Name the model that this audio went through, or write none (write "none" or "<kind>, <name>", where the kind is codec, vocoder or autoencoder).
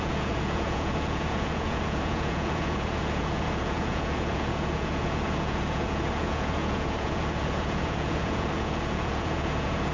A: vocoder, Vocos